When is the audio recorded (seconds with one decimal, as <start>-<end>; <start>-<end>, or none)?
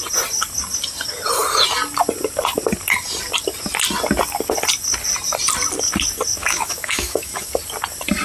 0.0-6.4; 7.5-8.2